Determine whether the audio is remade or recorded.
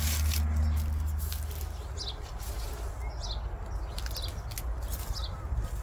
recorded